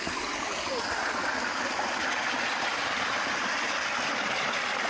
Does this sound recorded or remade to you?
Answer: recorded